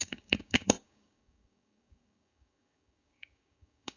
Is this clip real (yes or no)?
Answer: no